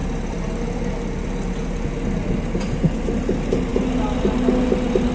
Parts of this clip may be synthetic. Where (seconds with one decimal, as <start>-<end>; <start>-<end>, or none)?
none